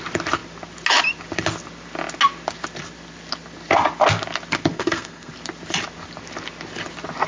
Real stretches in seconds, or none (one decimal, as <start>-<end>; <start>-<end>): 0.0-4.7; 5.3-7.3